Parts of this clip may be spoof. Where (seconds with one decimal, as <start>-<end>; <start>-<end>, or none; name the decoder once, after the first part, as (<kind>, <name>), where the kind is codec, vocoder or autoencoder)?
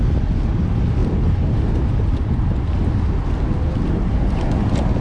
none